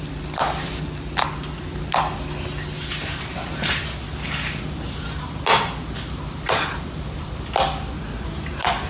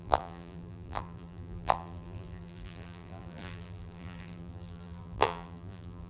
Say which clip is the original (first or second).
first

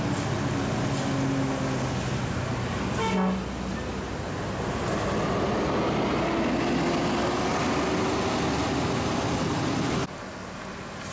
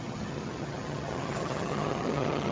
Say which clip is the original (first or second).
first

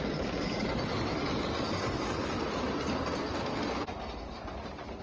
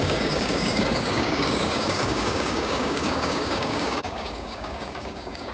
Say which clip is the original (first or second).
first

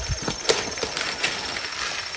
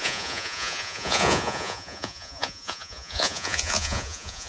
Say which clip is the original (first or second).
first